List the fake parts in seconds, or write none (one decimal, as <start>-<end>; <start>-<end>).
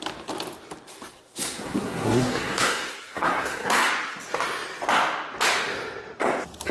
1.1-3.9